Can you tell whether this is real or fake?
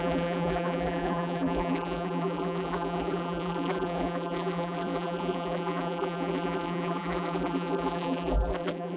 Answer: fake